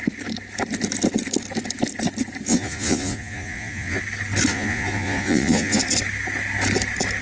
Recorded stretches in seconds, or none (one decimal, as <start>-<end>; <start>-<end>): 0.0-2.5; 4.0-4.5; 5.8-7.2

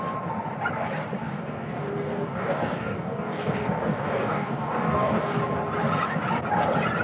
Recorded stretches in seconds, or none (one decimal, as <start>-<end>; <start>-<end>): 0.0-1.2; 5.4-7.0

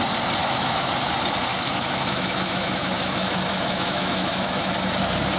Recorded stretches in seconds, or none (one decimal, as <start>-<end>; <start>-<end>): 0.0-0.4; 0.9-1.5; 4.7-5.4

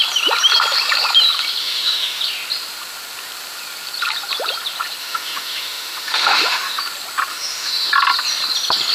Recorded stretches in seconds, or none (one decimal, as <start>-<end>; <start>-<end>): 0.0-1.6; 2.2-5.0; 6.8-7.3; 7.9-8.9

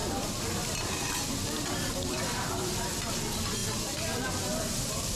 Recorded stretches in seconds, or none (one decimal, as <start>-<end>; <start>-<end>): 3.1-3.6; 4.3-5.2

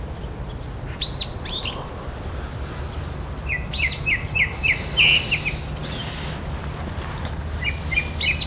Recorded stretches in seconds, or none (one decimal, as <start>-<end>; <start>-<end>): 0.0-8.5

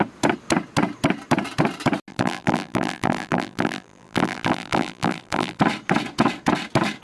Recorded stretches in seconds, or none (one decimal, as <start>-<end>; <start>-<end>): 0.0-2.1; 5.6-7.0

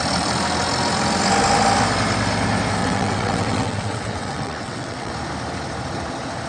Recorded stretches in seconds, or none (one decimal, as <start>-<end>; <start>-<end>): 0.0-2.8; 5.1-6.5